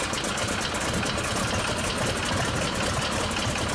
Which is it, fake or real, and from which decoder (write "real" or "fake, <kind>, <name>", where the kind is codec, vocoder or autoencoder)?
real